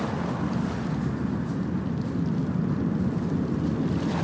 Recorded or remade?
recorded